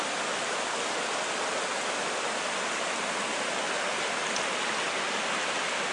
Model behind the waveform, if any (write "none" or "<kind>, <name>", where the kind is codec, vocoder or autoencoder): none